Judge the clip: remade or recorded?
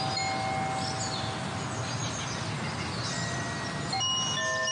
recorded